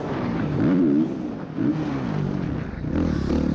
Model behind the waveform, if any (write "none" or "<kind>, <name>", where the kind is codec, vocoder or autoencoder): none